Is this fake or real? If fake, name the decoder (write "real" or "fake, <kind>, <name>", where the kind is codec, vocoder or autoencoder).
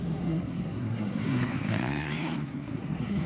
fake, codec, SNAC